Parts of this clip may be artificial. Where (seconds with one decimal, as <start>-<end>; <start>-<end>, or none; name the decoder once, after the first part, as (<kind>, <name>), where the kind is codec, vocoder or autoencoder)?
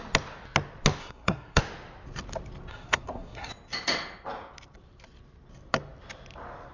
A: 1.0-1.6 (codec, SNAC); 2.7-3.5